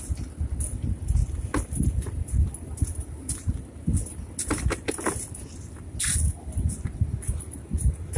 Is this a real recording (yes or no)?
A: yes